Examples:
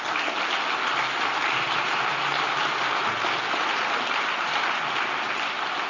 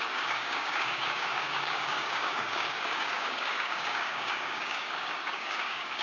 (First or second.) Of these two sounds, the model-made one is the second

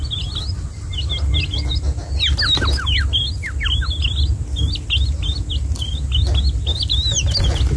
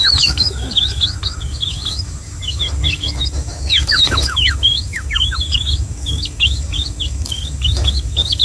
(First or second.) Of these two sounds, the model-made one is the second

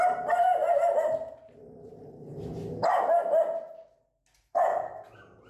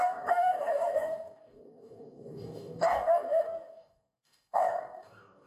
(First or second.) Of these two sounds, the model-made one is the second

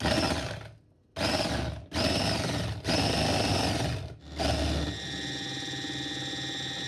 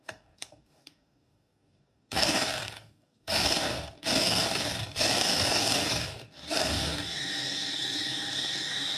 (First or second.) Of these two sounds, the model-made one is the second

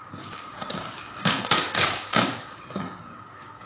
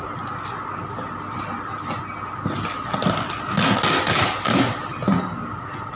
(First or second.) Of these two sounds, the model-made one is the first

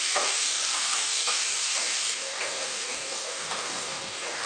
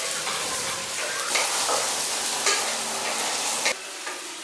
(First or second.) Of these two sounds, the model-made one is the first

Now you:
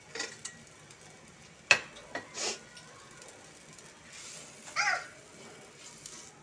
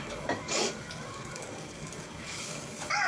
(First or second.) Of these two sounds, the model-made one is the second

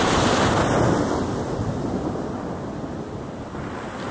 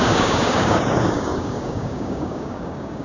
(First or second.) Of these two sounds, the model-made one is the second